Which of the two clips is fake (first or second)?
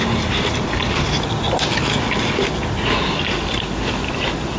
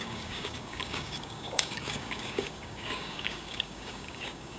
second